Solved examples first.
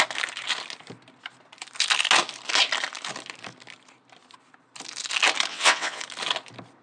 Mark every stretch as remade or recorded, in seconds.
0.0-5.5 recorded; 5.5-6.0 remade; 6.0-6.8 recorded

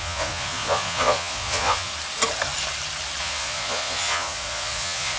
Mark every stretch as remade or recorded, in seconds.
0.0-1.9 remade; 1.9-3.2 recorded; 3.2-5.2 remade

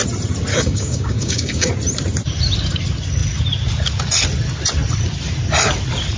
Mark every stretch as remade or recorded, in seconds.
0.0-0.5 recorded; 0.5-1.7 remade; 1.7-6.2 recorded